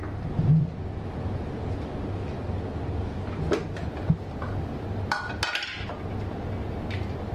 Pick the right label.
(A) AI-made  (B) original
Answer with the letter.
B